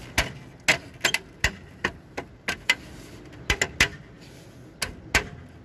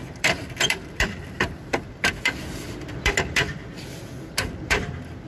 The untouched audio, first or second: first